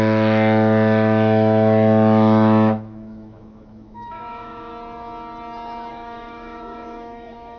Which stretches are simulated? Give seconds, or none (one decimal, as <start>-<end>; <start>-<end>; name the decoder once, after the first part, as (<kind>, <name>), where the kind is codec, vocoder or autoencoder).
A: 0.0-4.7 (autoencoder, DAC-VAE); 5.9-7.6